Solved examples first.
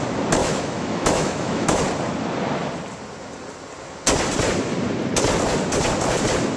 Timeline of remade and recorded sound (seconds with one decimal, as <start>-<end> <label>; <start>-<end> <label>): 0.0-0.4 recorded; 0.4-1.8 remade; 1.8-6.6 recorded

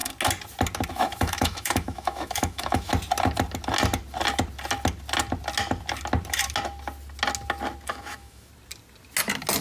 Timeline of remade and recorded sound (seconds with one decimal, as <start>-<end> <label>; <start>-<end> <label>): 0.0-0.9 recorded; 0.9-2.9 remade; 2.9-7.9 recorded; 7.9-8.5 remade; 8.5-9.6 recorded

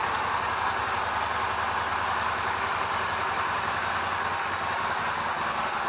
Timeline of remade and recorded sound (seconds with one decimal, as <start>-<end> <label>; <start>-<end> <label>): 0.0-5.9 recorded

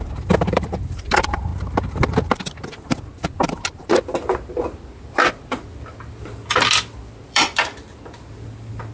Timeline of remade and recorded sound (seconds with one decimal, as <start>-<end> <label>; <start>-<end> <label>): 0.0-1.5 remade; 1.5-5.3 recorded; 5.3-8.9 remade

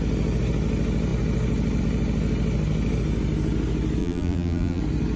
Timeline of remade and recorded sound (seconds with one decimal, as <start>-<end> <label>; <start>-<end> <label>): 0.0-4.0 recorded; 4.0-4.8 remade; 4.8-5.2 recorded